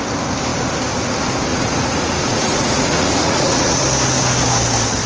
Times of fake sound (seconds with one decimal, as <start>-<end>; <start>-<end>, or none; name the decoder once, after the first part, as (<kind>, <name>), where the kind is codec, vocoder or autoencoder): 1.5-3.8 (vocoder, Vocos)